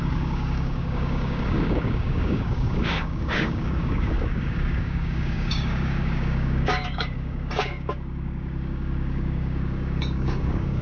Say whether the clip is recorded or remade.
remade